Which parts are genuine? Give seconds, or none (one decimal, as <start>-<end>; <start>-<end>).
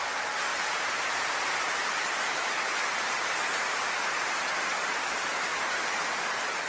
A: 0.0-0.5; 4.5-5.5